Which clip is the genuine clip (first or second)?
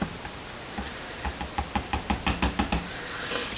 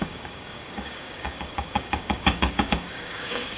first